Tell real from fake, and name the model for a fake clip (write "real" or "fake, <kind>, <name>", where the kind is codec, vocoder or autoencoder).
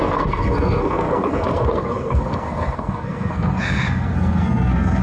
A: fake, codec, SNAC